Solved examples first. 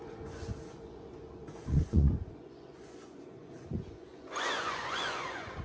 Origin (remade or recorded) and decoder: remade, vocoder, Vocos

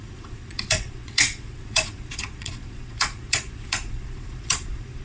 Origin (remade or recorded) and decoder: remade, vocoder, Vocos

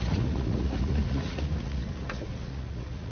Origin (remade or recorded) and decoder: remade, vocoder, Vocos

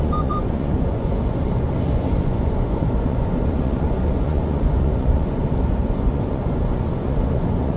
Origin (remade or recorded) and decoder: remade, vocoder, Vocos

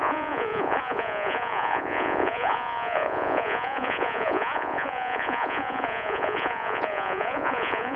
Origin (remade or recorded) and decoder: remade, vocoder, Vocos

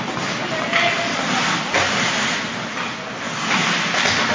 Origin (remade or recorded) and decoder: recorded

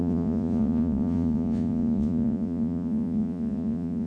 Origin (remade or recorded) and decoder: remade, vocoder, Vocos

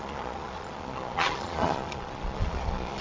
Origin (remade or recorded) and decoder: remade, vocoder, Vocos